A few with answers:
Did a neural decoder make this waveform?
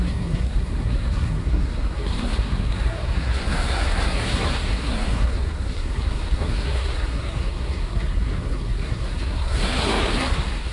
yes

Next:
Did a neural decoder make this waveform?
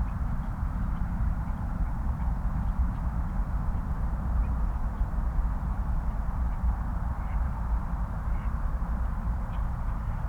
yes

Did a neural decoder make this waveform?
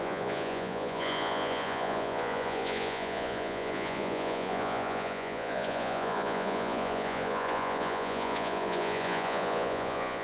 yes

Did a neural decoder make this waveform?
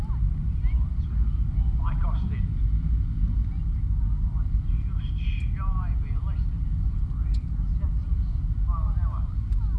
no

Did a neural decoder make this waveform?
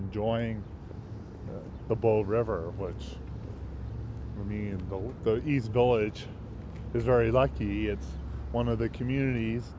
no